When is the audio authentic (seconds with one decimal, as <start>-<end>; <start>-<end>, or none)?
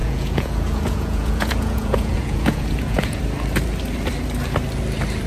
3.2-5.3